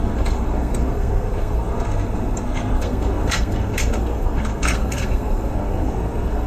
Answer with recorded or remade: remade